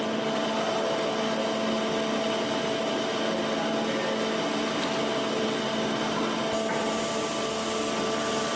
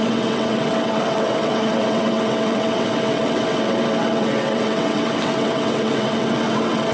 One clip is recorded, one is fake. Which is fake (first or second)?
second